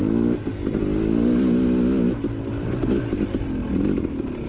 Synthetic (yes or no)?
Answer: no